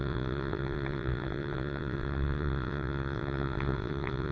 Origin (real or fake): fake